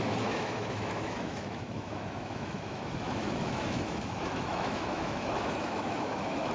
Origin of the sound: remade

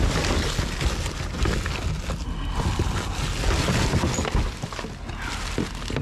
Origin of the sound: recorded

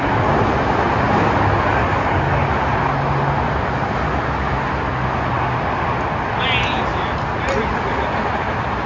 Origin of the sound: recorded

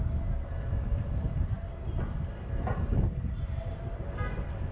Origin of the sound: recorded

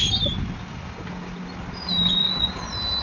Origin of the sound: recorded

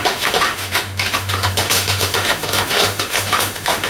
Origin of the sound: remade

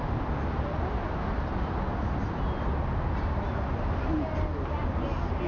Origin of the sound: recorded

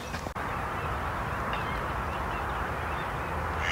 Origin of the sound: recorded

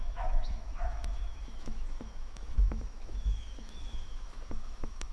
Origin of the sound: remade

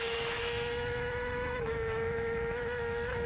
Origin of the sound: remade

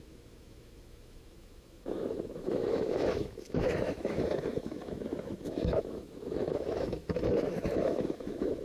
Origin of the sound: remade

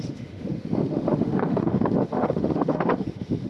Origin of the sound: remade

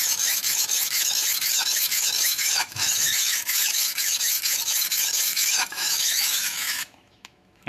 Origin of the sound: remade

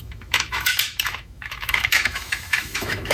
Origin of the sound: remade